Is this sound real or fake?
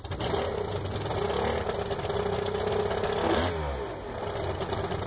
real